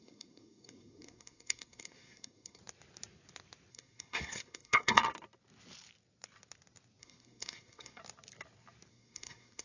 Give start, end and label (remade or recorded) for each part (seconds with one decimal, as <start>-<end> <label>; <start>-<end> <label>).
0.0-2.6 remade; 2.6-3.7 recorded; 3.7-5.0 remade; 5.0-7.0 recorded; 7.0-8.0 remade; 8.0-8.9 recorded; 8.9-9.6 remade